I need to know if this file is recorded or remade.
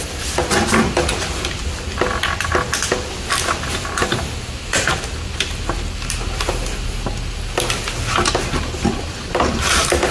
recorded